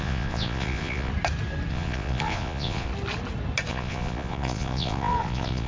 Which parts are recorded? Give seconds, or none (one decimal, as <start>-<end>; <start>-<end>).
1.1-1.7; 2.9-3.7

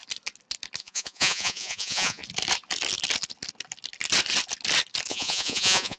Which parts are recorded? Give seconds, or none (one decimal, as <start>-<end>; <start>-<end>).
0.0-0.8; 2.2-5.1

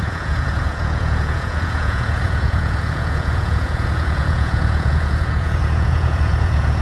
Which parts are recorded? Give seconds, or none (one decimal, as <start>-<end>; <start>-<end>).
none

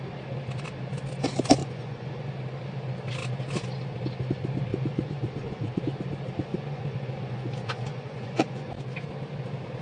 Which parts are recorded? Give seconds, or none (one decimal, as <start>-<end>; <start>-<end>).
0.0-1.6; 2.3-4.7; 5.8-6.5; 8.7-9.8

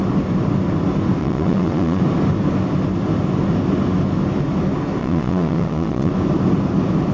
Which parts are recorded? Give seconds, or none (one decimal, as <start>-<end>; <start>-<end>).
0.0-1.2; 2.0-5.0; 6.1-7.1

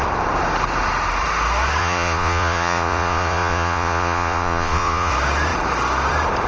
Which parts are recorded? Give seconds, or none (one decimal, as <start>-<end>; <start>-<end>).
0.0-1.8; 5.1-6.5

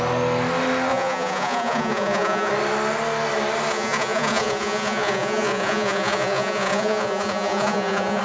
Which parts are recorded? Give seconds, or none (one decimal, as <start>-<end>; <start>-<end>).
0.0-0.9; 2.5-3.7

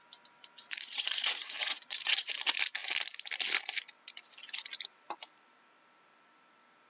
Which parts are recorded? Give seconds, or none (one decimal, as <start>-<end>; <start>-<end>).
0.0-0.6; 2.3-6.9